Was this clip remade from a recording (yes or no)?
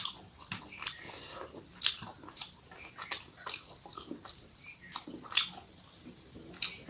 no